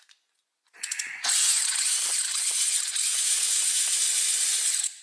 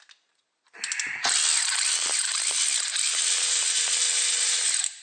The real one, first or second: second